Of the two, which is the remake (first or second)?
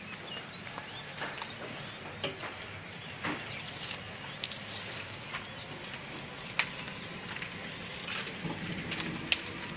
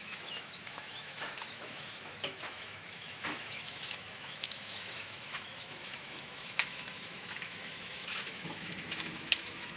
second